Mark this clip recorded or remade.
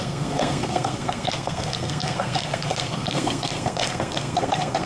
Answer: remade